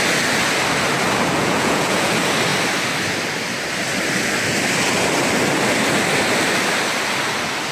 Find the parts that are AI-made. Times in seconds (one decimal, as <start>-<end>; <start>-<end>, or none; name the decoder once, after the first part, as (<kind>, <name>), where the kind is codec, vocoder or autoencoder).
1.4-2.1 (vocoder, Vocos)